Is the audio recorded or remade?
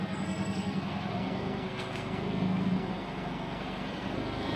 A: remade